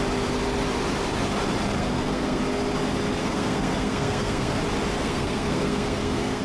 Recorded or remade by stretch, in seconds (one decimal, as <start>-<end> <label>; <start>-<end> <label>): 0.0-1.8 recorded; 1.8-2.4 remade; 2.4-3.2 recorded; 3.2-4.6 remade; 4.6-5.0 recorded; 5.0-6.4 remade